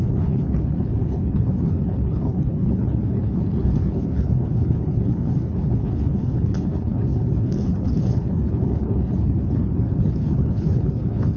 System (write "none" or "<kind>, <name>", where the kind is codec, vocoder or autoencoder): codec, HILCodec